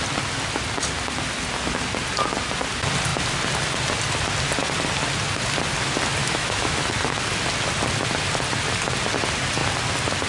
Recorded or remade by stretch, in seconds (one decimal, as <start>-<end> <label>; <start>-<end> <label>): 0.0-6.2 recorded; 6.2-6.9 remade; 6.9-10.3 recorded